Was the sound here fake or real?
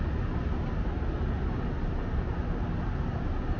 real